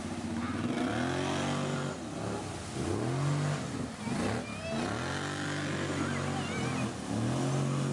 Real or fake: real